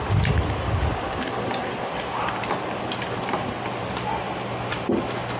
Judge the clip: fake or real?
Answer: real